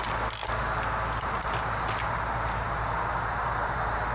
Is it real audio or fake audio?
real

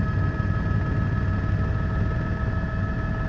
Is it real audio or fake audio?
real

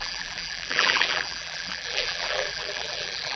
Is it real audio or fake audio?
fake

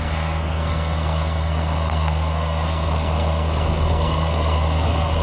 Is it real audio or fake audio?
fake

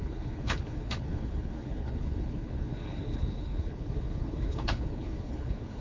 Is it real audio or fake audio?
fake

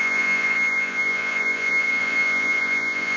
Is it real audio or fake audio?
fake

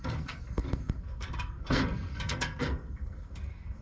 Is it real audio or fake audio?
fake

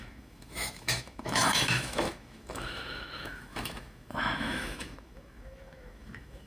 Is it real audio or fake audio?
fake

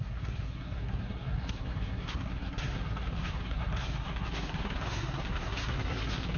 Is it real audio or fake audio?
fake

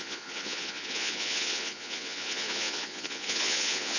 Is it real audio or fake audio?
fake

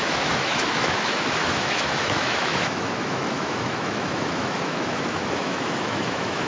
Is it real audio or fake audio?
fake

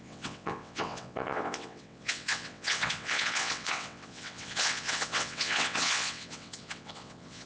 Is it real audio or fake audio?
fake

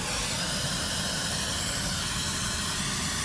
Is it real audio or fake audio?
real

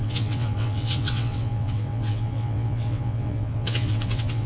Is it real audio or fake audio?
fake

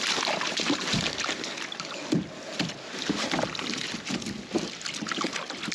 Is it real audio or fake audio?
real